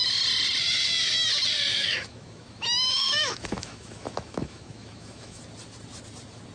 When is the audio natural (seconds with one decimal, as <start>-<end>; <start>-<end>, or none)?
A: 0.0-1.7; 5.4-6.5